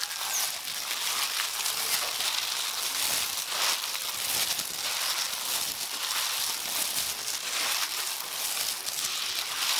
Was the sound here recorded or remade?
recorded